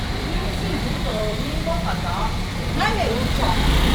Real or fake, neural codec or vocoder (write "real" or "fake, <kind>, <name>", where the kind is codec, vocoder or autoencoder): fake, vocoder, BigVGAN v2